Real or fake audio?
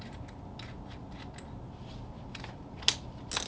real